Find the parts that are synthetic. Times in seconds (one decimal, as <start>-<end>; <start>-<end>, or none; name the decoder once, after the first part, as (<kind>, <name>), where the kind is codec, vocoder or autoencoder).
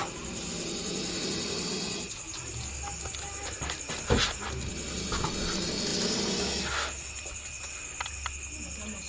none